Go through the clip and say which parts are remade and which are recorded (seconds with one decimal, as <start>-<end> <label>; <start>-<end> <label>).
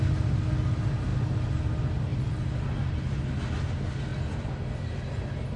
0.0-5.6 recorded